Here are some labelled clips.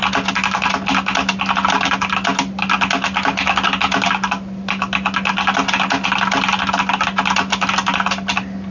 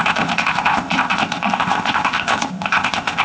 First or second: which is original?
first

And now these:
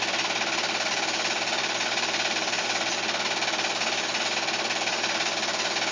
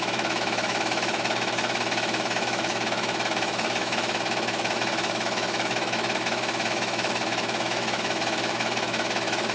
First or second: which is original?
first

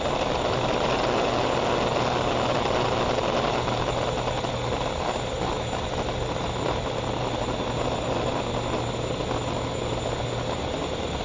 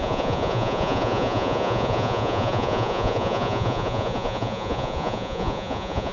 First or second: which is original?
first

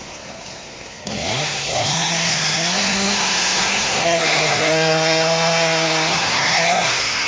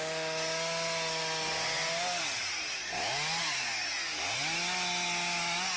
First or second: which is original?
second